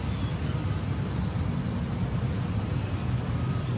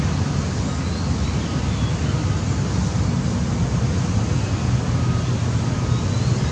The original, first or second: second